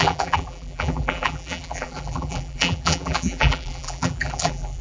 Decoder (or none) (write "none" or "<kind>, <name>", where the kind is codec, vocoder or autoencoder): vocoder, BigVGAN v2